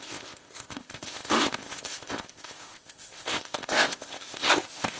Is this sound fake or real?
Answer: fake